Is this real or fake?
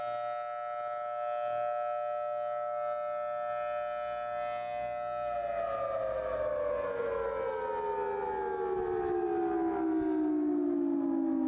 real